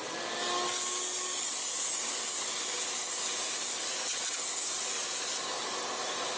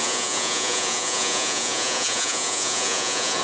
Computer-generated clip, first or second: second